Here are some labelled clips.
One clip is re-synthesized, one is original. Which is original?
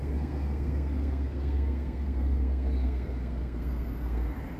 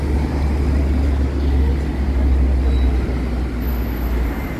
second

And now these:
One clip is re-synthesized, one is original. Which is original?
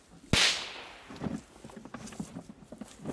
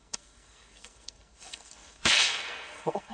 first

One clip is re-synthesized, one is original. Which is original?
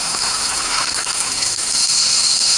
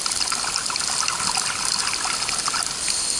second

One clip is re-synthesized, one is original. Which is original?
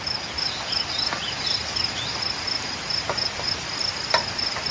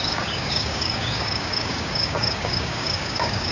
first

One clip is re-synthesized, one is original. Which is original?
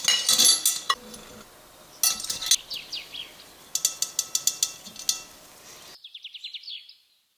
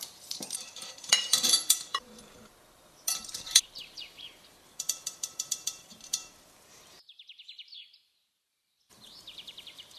first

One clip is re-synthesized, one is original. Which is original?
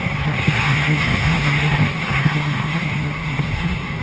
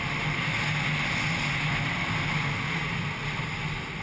second